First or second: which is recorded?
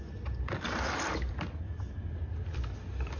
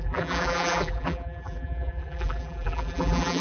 first